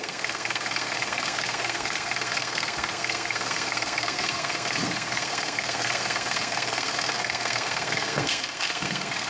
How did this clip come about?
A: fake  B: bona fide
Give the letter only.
A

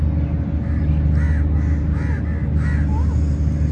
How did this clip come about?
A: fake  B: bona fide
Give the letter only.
B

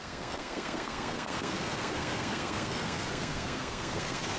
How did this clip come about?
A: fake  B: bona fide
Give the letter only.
A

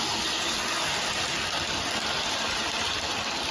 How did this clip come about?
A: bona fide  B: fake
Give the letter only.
A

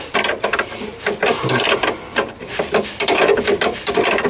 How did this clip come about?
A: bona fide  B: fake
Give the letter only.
A